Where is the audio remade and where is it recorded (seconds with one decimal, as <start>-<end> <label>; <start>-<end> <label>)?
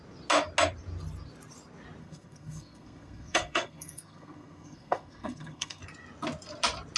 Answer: 0.0-2.0 recorded; 2.0-5.8 remade; 5.8-7.0 recorded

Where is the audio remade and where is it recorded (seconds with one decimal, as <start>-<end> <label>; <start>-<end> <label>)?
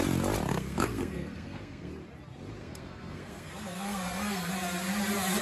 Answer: 0.0-0.5 recorded; 0.5-1.9 remade; 1.9-2.6 recorded; 2.6-4.5 remade; 4.5-5.4 recorded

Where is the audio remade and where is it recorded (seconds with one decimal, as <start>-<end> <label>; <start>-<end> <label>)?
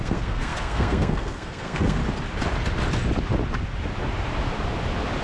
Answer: 0.0-2.0 remade; 2.0-5.2 recorded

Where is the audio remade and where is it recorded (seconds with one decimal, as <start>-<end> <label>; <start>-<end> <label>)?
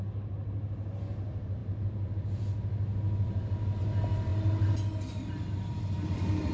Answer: 0.0-6.5 recorded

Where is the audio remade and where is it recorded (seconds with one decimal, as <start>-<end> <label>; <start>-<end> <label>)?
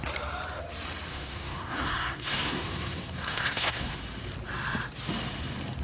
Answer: 0.0-1.1 recorded; 1.1-4.0 remade; 4.0-5.8 recorded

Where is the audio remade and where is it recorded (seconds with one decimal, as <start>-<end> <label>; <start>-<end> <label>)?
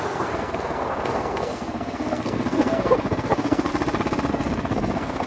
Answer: 0.0-3.7 remade; 3.7-4.3 recorded; 4.3-5.3 remade